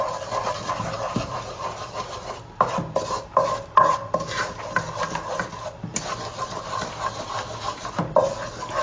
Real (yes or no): yes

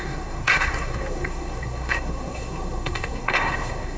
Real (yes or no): no